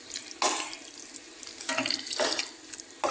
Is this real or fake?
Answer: real